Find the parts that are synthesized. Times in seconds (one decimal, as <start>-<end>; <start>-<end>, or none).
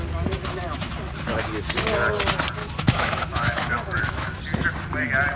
0.4-0.9; 2.6-4.4